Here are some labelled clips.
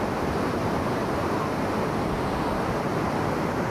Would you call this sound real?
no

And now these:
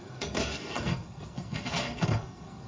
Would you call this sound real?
no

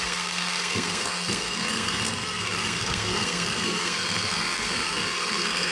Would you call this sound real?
no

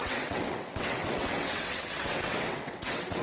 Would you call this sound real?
no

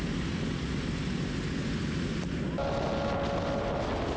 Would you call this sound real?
yes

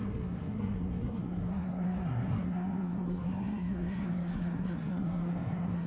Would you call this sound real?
no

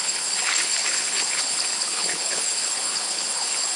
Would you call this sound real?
no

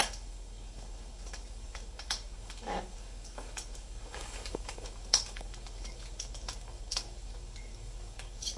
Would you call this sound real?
no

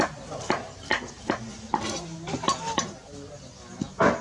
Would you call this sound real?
yes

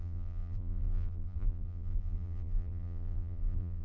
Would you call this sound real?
no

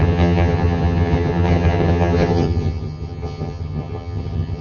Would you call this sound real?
no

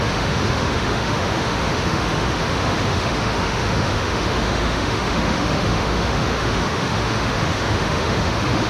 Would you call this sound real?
no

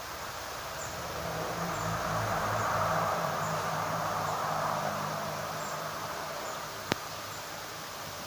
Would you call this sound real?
no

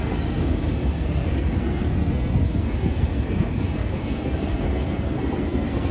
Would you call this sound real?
no